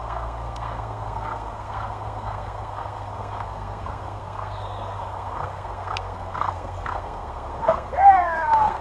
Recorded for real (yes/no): no